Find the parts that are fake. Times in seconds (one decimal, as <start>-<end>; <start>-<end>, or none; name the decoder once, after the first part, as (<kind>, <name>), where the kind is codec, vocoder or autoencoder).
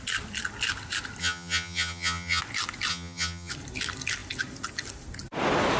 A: 1.2-2.4 (vocoder, HiFi-GAN); 2.9-3.5